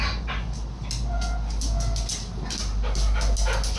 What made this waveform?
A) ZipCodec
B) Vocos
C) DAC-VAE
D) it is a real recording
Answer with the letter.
D